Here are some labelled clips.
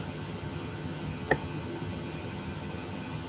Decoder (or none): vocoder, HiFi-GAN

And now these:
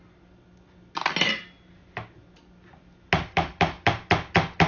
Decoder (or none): none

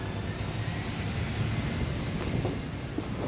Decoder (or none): none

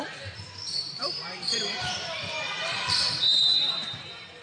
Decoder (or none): vocoder, BigVGAN v2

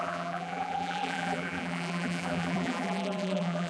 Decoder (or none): vocoder, BigVGAN v2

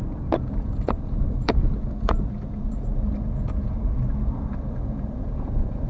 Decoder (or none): vocoder, Vocos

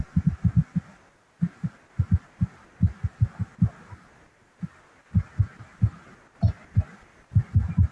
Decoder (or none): none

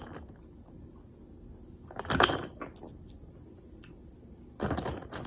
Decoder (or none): none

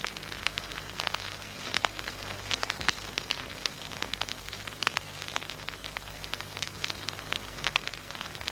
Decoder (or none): codec, SNAC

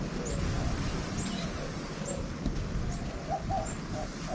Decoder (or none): none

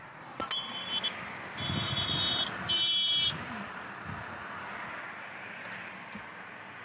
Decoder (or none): none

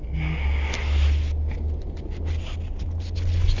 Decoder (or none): none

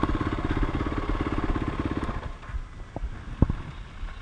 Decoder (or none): none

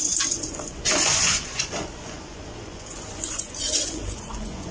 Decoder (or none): vocoder, Vocos